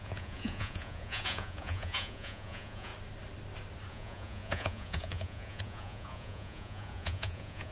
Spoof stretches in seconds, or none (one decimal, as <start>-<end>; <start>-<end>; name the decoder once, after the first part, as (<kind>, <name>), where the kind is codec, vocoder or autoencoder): 0.0-2.9 (vocoder, Vocos); 3.9-7.7